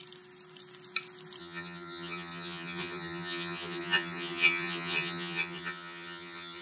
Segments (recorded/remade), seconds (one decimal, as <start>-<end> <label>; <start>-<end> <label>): 0.0-1.4 recorded; 1.4-6.6 remade